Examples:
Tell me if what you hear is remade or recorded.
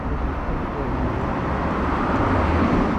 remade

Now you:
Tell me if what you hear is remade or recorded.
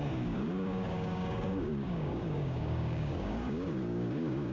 remade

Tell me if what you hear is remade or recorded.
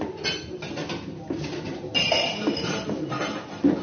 recorded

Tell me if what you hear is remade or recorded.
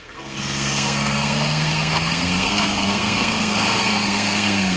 remade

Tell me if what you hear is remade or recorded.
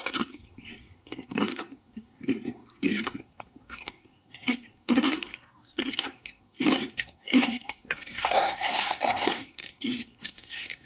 remade